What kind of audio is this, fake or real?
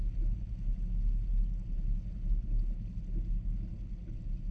real